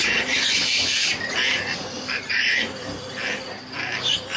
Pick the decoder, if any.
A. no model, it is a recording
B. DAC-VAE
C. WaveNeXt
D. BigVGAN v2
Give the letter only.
D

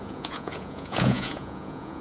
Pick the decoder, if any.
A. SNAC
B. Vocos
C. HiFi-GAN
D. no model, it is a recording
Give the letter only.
B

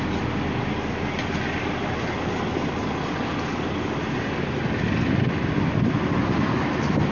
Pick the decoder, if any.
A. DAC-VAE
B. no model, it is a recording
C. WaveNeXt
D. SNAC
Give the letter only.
B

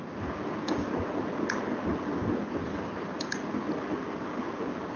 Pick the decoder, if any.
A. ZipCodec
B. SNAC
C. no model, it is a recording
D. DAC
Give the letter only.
C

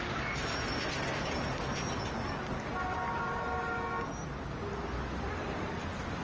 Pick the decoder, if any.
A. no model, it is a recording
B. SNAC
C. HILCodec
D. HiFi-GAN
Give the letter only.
A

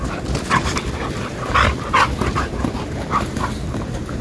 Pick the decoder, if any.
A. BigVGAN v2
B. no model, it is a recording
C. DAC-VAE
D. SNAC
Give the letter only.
B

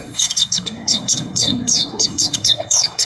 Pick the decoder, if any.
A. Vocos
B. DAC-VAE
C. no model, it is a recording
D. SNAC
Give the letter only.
D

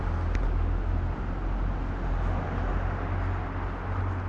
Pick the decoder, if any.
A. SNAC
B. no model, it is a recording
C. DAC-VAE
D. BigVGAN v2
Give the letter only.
B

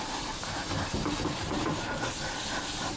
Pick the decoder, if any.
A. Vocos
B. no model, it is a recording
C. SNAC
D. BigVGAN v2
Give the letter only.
D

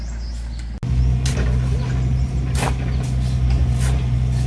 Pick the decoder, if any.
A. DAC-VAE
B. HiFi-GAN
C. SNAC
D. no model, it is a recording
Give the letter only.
D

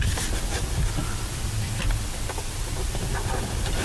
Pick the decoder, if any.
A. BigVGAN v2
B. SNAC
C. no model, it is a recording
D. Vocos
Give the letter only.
A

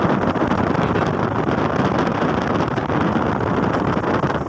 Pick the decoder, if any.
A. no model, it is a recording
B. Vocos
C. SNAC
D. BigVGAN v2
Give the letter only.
A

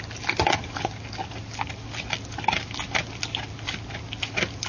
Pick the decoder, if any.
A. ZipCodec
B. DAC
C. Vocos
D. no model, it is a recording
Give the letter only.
D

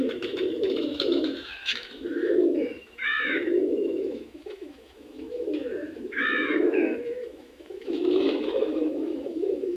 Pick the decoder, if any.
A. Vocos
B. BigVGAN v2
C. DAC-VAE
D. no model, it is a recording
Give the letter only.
C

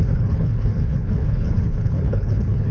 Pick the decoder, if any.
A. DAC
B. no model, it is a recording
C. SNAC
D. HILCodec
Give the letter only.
D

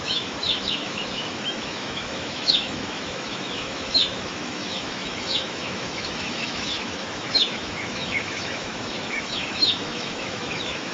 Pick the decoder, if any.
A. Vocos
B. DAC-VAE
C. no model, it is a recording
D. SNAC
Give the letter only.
B